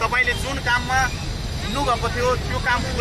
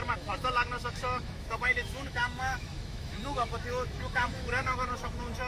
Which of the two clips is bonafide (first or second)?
first